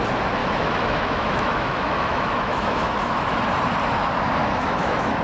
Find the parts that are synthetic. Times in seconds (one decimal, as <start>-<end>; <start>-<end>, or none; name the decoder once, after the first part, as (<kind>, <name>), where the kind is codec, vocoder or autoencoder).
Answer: 0.4-3.4 (autoencoder, DAC-VAE); 4.4-5.2